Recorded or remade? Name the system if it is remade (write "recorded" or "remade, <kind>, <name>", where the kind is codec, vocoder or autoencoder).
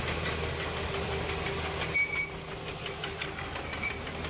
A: recorded